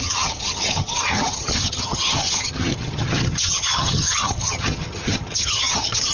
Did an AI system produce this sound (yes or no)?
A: yes